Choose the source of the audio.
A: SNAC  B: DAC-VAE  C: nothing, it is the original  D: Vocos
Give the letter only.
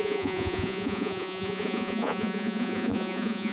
D